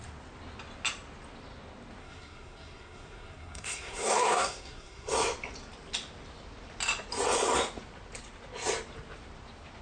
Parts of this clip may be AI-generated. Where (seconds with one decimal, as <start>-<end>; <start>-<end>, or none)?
2.0-5.1